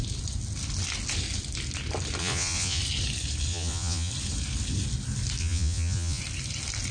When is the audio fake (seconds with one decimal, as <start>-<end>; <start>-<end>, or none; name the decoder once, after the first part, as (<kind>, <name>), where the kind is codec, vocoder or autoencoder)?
2.2-2.8 (vocoder, Vocos); 3.5-4.1; 5.4-6.2